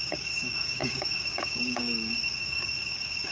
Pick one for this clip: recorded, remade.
remade